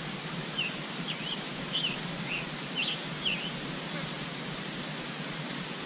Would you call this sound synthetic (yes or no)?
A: no